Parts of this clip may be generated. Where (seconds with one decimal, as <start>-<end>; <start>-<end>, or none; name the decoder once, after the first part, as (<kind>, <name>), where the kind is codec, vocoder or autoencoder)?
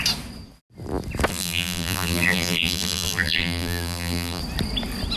1.3-4.4 (vocoder, BigVGAN v2)